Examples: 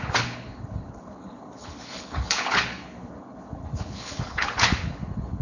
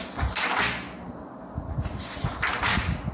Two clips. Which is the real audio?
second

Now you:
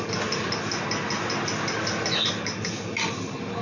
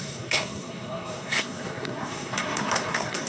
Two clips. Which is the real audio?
first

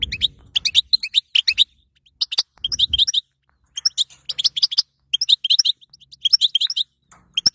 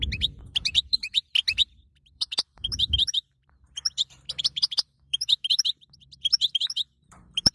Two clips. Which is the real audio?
first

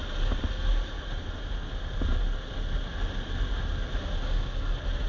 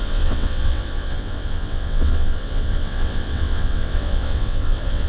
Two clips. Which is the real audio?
first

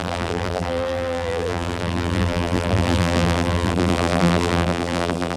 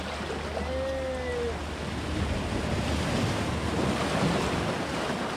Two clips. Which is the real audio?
second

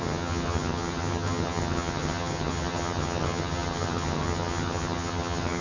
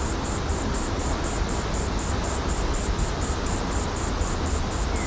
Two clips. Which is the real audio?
second